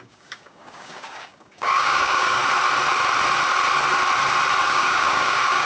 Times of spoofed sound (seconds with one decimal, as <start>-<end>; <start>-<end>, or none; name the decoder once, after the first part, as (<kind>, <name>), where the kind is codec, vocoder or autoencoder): 0.0-2.4 (codec, DAC); 4.6-5.7